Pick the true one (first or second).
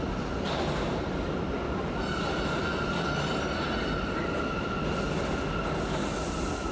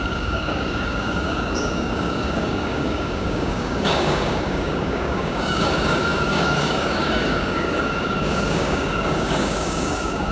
first